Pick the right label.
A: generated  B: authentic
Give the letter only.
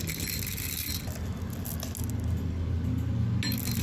B